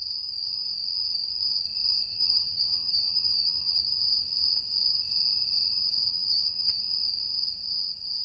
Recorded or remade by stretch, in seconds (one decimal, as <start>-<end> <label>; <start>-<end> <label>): 0.0-2.1 recorded; 2.1-3.8 remade; 3.8-6.1 recorded; 6.1-6.8 remade; 6.8-8.2 recorded

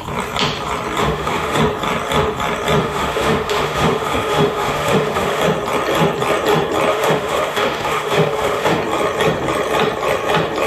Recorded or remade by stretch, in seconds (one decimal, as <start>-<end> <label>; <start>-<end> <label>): 0.0-1.0 recorded; 1.0-1.6 remade; 1.6-2.8 recorded; 2.8-5.4 remade; 5.4-6.9 recorded; 6.9-8.8 remade; 8.8-10.7 recorded

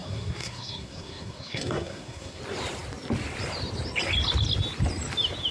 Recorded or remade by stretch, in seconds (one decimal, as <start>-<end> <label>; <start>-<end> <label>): 0.0-2.4 remade; 2.4-5.5 recorded